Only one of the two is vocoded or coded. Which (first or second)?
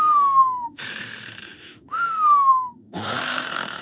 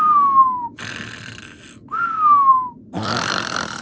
first